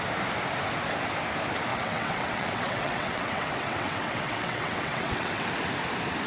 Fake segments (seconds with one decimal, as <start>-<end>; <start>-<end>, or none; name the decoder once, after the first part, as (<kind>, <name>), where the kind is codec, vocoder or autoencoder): 1.7-5.5 (vocoder, WaveNeXt)